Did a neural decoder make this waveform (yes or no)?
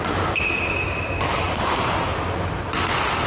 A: no